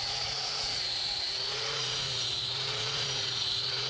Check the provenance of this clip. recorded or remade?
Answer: remade